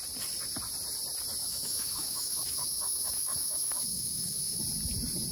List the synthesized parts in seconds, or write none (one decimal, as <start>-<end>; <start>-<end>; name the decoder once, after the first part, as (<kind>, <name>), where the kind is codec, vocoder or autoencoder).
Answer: 1.4-4.6 (autoencoder, DAC-VAE)